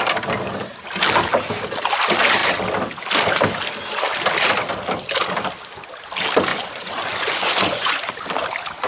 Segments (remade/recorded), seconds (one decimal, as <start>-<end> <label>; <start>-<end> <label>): 0.0-6.5 recorded; 6.5-8.1 remade; 8.1-8.9 recorded